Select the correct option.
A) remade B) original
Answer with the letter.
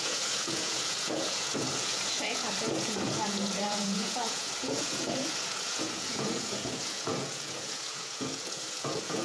A